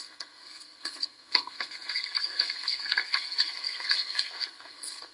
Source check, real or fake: fake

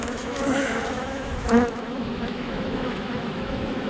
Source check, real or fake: fake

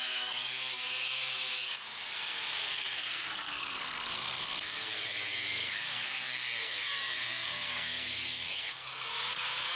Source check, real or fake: fake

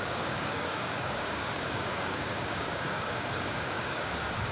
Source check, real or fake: fake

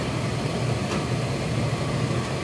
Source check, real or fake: fake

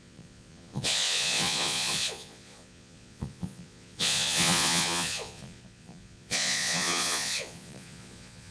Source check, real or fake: fake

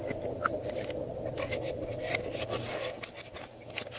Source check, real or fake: real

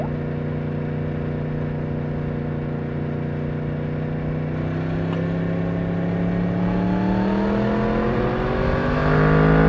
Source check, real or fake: real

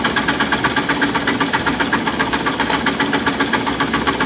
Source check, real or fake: real